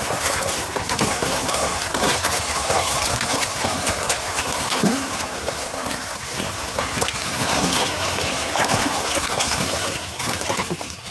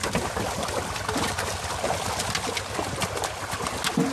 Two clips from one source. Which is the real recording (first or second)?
second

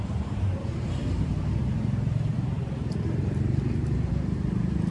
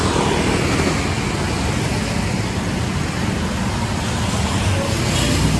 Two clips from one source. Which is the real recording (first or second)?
second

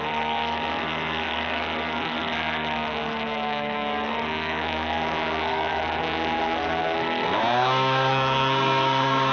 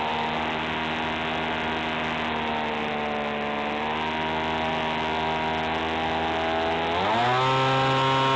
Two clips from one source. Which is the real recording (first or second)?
second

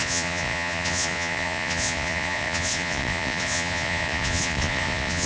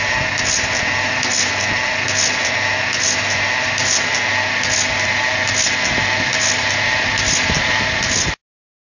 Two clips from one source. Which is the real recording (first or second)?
second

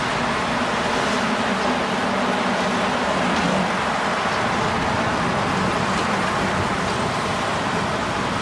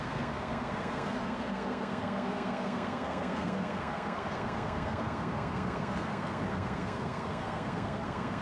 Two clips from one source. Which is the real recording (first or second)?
first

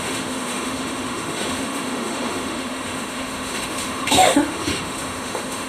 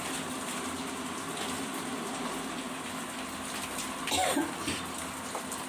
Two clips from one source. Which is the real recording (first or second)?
second